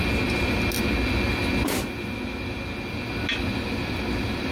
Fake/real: real